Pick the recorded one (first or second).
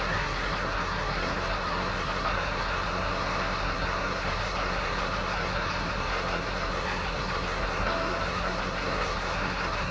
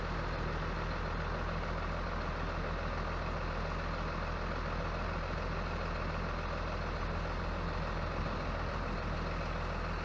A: second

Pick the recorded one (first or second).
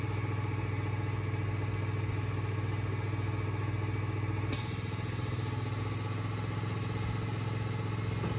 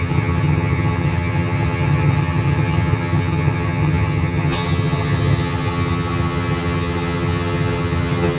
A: first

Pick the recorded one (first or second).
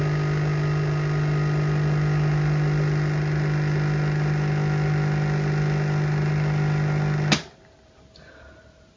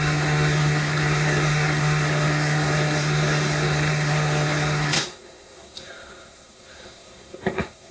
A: first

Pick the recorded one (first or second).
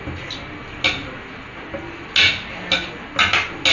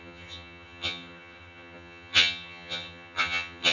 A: first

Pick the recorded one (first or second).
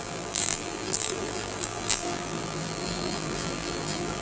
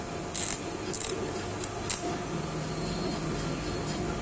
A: second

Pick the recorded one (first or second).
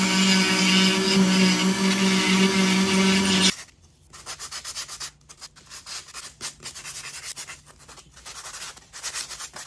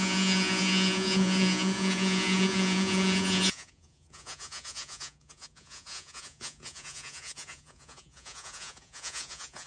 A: first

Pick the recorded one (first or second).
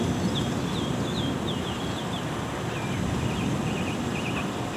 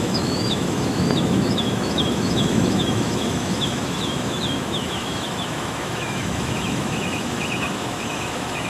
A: first